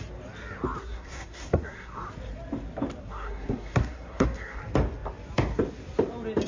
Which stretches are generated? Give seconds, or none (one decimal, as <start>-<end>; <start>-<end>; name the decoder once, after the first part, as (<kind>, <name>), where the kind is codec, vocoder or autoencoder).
0.8-2.0 (codec, SNAC); 3.0-4.6